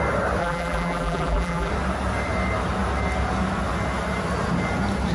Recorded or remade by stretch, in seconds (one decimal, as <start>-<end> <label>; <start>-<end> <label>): 0.0-0.4 recorded; 0.4-1.7 remade; 1.7-5.1 recorded